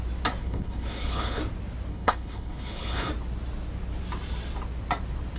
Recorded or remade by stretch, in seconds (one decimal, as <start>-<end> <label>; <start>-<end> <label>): 0.0-0.4 recorded; 0.4-1.4 remade; 1.4-1.9 recorded; 1.9-3.1 remade; 3.1-5.4 recorded